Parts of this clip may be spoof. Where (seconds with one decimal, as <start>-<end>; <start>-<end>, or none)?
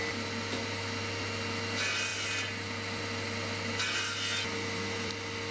none